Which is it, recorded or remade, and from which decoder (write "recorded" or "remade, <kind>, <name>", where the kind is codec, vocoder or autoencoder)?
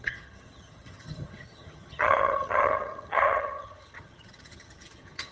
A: remade, vocoder, HiFi-GAN